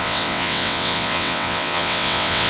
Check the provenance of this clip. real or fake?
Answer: fake